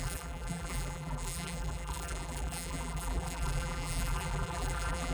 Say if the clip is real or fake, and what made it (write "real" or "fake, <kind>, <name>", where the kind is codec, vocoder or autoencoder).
fake, vocoder, BigVGAN v2